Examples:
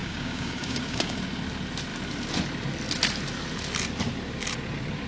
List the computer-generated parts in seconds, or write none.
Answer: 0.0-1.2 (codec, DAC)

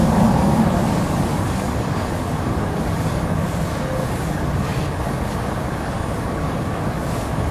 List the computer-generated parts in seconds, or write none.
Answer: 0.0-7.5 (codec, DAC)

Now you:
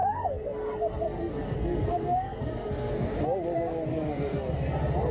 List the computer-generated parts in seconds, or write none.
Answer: 0.0-3.1 (codec, SNAC); 3.9-4.5

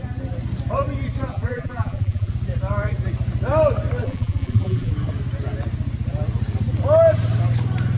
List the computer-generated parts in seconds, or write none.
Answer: 1.3-2.3 (vocoder, BigVGAN v2); 4.0-4.9

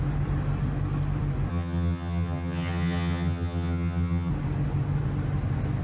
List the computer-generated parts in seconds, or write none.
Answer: 1.5-4.3 (vocoder, HiFi-GAN)

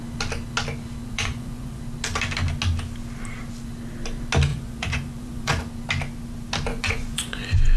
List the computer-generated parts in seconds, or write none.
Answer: 1.0-1.8 (vocoder, Vocos); 4.5-5.6; 6.7-7.8

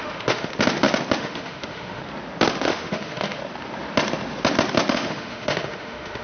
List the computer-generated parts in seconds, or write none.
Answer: 0.0-0.5 (autoencoder, DAC-VAE); 1.2-2.0; 2.5-3.4; 4.9-6.2